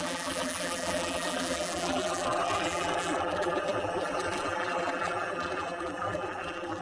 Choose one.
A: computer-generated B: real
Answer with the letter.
A